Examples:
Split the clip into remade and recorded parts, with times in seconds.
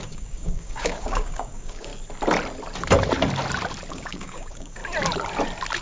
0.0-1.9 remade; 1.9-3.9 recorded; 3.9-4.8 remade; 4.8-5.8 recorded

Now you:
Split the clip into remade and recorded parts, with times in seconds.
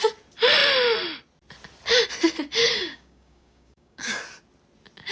0.0-2.6 recorded; 2.6-4.2 remade; 4.2-5.1 recorded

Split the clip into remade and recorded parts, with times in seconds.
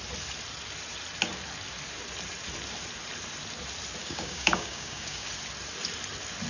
0.0-4.0 recorded; 4.0-5.3 remade; 5.3-6.5 recorded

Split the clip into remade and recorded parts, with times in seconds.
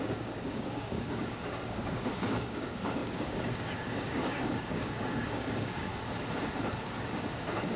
0.0-5.9 remade; 5.9-7.1 recorded; 7.1-7.8 remade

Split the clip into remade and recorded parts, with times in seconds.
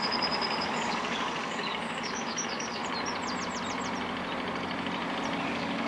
0.0-2.8 remade; 2.8-5.4 recorded; 5.4-5.9 remade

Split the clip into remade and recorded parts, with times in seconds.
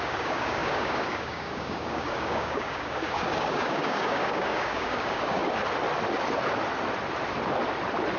0.0-5.4 remade; 5.4-8.2 recorded